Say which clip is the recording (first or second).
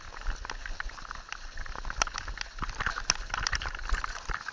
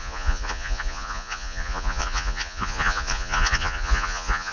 first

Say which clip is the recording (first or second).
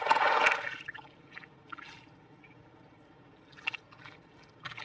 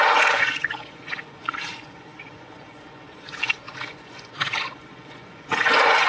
first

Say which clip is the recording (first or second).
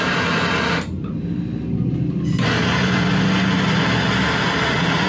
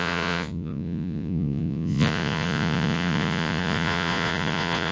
first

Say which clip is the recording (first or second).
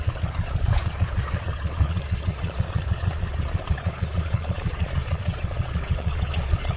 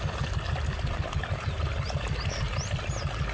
second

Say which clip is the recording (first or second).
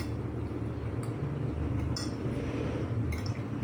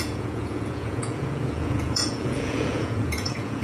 first